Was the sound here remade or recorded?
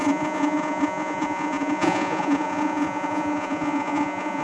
remade